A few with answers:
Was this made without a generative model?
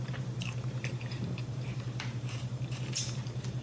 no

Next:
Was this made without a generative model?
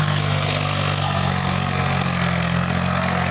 no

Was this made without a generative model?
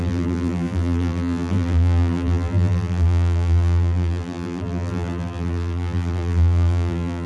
no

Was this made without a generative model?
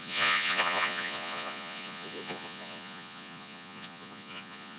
no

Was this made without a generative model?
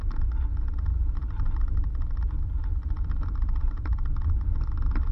yes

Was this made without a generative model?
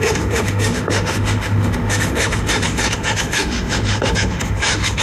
no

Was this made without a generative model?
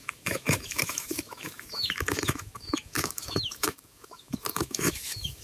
no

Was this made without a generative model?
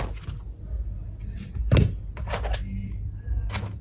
yes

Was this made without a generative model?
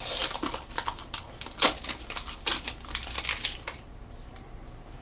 yes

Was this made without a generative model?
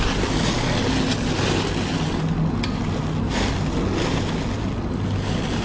yes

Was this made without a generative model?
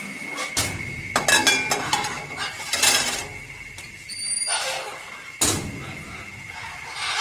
yes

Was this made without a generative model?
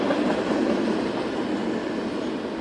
yes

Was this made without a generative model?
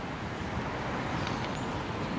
yes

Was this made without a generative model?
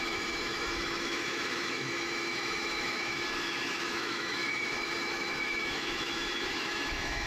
no